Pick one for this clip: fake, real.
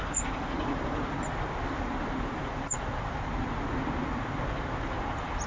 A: real